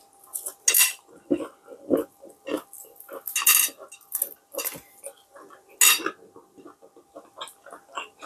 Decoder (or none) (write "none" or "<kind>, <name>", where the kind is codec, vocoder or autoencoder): none